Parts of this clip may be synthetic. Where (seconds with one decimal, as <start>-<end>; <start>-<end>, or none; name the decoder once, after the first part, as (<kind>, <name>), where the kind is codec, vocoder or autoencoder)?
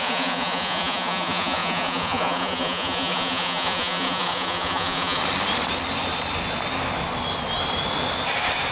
0.0-5.2 (vocoder, Vocos)